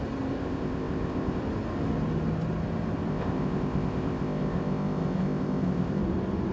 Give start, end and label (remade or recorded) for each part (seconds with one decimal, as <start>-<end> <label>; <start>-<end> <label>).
0.0-0.4 recorded; 0.4-1.4 remade; 1.4-3.1 recorded; 3.1-6.0 remade; 6.0-6.5 recorded

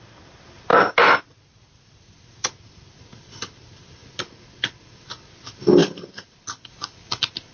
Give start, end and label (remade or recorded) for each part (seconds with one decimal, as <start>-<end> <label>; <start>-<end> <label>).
0.0-7.5 recorded

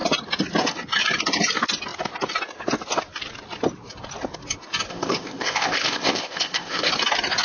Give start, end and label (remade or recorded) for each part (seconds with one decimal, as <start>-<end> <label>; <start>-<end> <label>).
0.0-4.9 recorded; 4.9-6.9 remade; 6.9-7.4 recorded

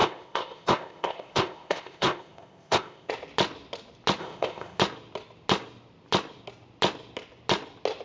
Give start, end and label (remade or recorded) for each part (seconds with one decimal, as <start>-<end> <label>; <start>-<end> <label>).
0.0-3.1 remade; 3.1-4.2 recorded; 4.2-4.8 remade; 4.8-8.0 recorded